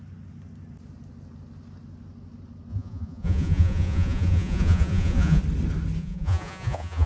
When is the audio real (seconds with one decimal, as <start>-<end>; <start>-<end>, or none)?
0.0-2.7; 5.4-6.0